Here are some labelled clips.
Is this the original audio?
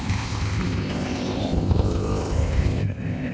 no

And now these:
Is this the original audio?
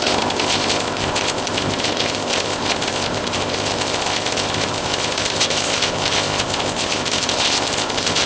no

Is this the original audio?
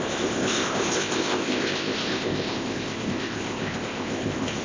no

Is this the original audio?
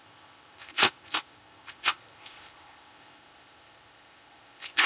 no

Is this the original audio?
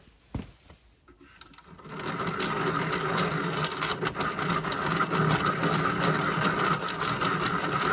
yes